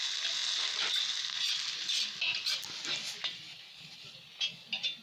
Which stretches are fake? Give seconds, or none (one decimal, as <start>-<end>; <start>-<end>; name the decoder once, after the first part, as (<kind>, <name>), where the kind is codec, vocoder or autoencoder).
none